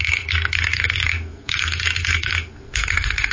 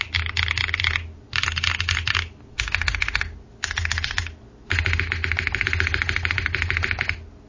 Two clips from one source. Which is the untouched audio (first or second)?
second